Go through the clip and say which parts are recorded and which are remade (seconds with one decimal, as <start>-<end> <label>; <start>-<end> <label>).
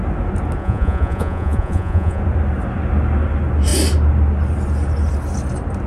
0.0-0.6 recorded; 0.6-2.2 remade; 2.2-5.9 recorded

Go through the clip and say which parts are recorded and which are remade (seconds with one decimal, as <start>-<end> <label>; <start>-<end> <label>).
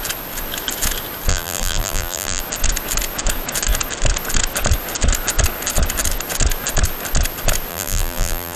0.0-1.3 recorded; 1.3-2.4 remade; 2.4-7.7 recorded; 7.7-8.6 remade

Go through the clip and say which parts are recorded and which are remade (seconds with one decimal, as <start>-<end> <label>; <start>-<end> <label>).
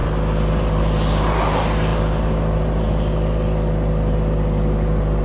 0.0-5.2 recorded